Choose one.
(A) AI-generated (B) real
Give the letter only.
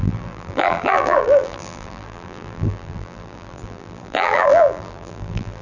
A